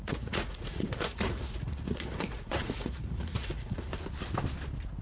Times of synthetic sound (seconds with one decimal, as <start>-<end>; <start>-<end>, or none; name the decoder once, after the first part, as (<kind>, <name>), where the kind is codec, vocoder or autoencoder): 0.0-3.9 (vocoder, Vocos)